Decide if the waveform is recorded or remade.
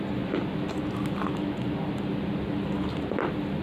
recorded